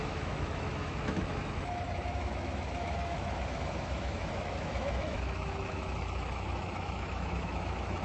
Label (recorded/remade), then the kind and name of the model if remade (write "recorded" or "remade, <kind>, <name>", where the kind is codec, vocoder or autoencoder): remade, autoencoder, DAC-VAE